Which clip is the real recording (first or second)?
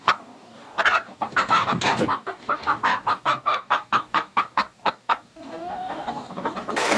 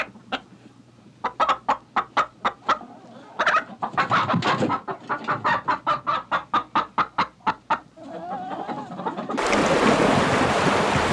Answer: second